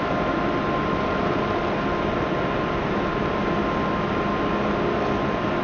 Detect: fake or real real